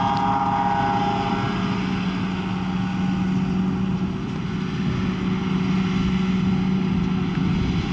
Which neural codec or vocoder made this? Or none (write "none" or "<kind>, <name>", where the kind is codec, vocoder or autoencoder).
none